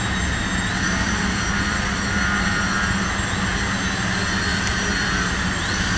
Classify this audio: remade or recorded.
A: recorded